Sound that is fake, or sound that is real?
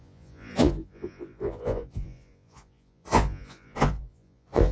fake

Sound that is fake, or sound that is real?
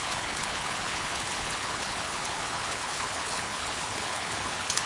fake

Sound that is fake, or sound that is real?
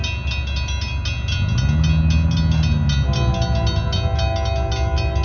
real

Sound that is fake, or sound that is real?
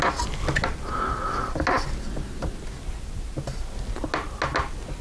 real